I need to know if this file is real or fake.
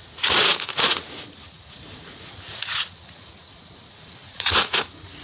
fake